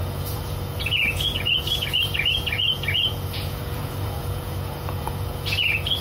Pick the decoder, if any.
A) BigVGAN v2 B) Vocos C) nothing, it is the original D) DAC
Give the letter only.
B